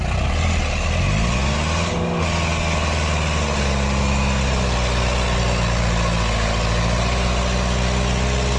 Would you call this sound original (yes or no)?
yes